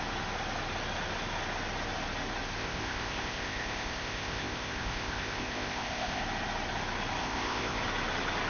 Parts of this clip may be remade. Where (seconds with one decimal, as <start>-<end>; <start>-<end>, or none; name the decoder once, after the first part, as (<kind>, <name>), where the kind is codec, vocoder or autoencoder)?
2.6-6.2 (codec, ZipCodec); 7.2-7.8